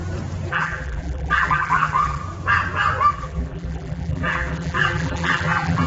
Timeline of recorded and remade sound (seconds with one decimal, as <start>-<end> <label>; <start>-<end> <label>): 0.0-0.5 recorded; 0.5-2.2 remade; 2.2-3.1 recorded; 3.1-5.9 remade